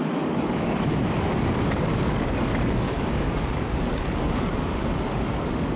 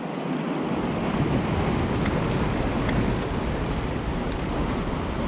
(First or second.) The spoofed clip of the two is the first